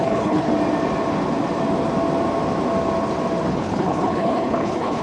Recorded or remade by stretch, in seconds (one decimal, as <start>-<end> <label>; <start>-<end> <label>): 0.0-0.5 remade; 0.5-3.5 recorded; 3.5-5.0 remade